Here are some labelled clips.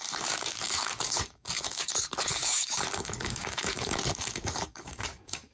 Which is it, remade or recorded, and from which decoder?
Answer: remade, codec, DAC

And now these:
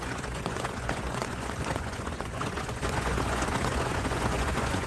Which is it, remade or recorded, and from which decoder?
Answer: remade, vocoder, Vocos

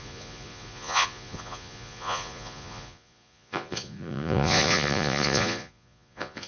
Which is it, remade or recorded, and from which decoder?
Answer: remade, vocoder, Vocos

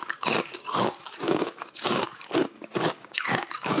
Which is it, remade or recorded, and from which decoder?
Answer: remade, codec, DAC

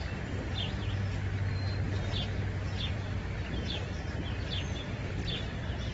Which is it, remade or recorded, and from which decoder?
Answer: recorded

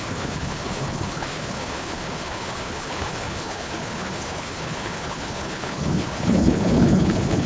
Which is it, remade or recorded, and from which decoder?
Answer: remade, codec, HILCodec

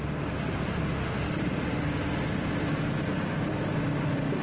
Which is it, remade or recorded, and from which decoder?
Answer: recorded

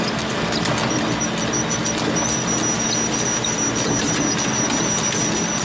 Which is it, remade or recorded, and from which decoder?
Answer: recorded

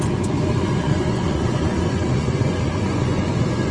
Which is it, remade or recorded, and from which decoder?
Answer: remade, vocoder, Vocos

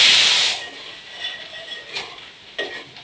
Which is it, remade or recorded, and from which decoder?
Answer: recorded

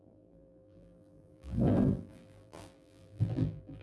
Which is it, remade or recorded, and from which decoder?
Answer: remade, vocoder, BigVGAN v2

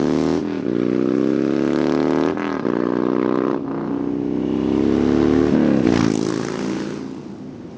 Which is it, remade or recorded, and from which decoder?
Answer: recorded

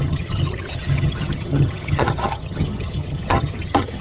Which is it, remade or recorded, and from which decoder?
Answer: remade, vocoder, HiFi-GAN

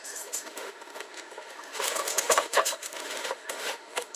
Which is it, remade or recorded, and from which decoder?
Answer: remade, autoencoder, DAC-VAE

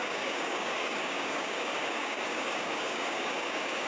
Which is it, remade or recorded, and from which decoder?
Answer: remade, codec, DAC